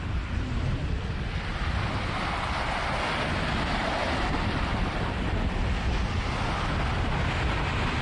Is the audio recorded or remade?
recorded